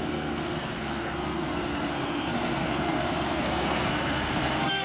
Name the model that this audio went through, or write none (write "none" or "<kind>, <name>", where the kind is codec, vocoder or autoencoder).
codec, SNAC